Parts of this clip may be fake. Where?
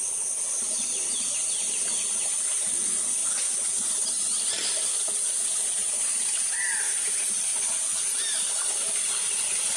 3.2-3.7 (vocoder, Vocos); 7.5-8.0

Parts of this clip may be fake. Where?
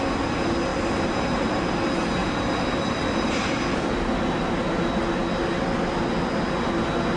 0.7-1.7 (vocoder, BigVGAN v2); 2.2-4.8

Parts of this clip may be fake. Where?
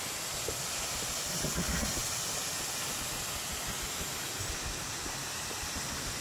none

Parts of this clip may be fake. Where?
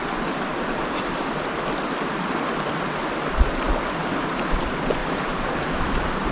5.0-6.3 (vocoder, BigVGAN v2)